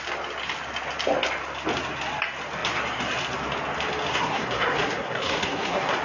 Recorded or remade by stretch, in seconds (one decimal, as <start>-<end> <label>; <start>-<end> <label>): 0.0-4.1 recorded; 4.1-6.0 remade